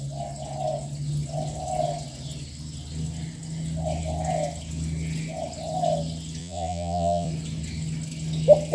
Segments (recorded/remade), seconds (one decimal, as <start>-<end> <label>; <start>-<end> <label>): 0.0-6.4 recorded; 6.4-7.3 remade; 7.3-8.7 recorded